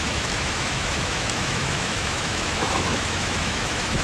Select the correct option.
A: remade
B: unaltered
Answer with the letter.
A